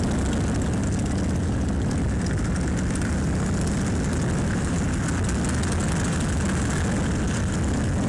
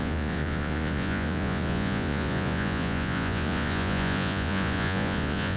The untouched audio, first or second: first